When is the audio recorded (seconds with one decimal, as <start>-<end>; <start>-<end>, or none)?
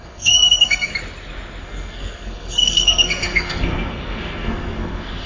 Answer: 0.9-1.6